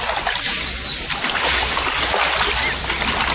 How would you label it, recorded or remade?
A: recorded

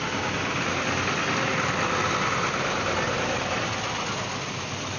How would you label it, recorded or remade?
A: recorded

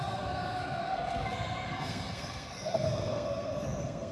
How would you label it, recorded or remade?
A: remade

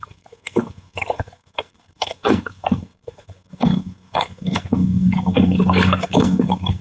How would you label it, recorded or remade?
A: remade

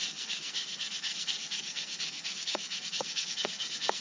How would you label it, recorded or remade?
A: remade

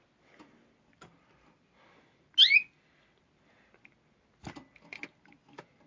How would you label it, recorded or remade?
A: recorded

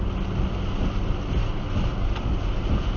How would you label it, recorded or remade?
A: recorded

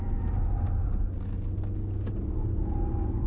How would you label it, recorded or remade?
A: recorded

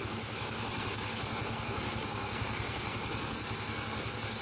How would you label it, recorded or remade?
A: remade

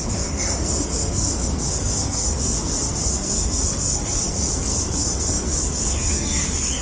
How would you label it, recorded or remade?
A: remade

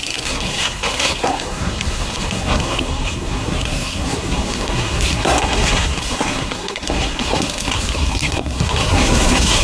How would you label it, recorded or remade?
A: remade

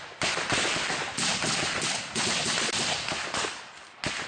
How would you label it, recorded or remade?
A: recorded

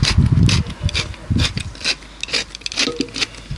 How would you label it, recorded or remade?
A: recorded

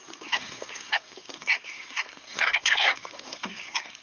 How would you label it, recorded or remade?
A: remade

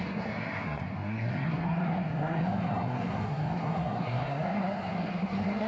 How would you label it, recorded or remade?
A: remade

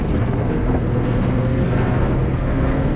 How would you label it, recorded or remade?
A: remade